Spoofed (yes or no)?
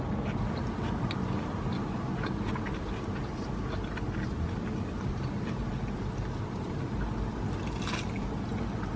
no